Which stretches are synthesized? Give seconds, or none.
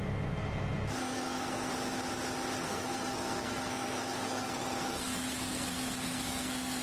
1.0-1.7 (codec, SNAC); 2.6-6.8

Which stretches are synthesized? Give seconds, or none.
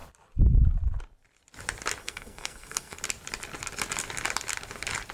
2.0-3.0 (codec, SNAC)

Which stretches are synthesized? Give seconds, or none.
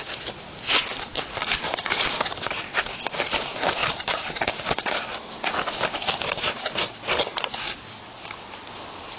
none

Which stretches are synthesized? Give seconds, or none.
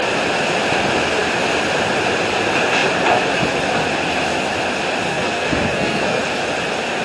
5.1-6.2 (codec, SNAC)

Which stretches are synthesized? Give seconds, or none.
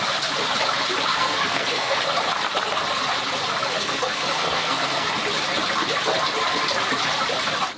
1.1-2.0 (codec, SNAC); 3.7-5.1